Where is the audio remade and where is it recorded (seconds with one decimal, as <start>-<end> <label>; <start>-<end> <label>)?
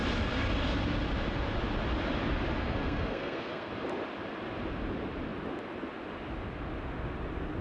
0.0-2.6 recorded; 2.6-3.7 remade; 3.7-7.6 recorded